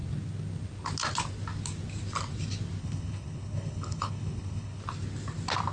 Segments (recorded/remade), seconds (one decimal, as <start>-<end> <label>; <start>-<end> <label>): 0.0-2.8 recorded; 2.8-4.8 remade; 4.8-5.7 recorded